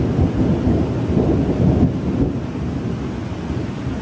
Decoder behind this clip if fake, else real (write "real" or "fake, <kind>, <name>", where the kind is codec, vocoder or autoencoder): real